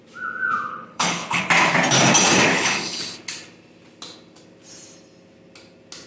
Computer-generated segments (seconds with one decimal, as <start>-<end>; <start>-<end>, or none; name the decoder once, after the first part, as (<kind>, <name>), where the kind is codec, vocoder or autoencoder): 0.7-1.4 (codec, HILCodec); 2.5-3.0